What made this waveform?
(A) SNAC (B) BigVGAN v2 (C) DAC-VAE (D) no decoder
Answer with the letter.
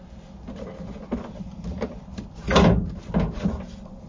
D